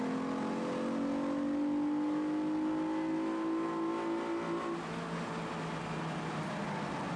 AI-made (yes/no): no